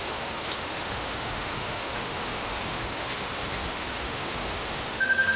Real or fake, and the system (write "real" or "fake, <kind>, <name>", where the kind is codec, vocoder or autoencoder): fake, autoencoder, DAC-VAE